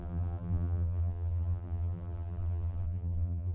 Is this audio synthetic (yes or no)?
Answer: yes